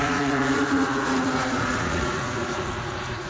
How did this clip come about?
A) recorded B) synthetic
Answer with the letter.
B